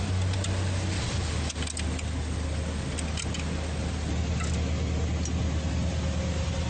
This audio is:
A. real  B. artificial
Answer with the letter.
A